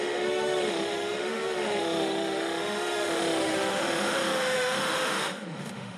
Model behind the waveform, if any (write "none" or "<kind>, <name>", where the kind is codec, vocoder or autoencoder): autoencoder, DAC-VAE